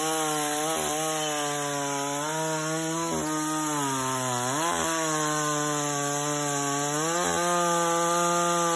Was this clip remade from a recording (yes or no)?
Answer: no